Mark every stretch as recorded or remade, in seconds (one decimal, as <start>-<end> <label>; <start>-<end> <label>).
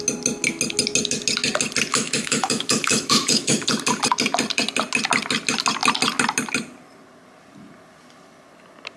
0.0-1.9 recorded; 1.9-3.7 remade; 3.7-9.0 recorded